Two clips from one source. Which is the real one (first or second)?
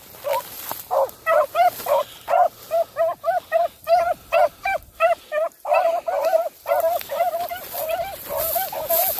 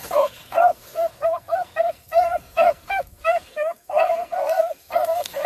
first